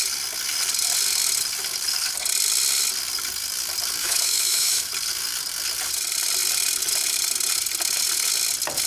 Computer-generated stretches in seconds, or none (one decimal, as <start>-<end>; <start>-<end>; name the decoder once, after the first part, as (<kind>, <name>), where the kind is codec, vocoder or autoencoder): 4.0-4.9 (autoencoder, DAC-VAE)